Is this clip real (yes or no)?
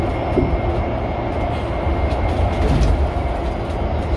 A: yes